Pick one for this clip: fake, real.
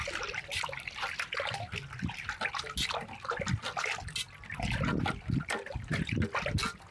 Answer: real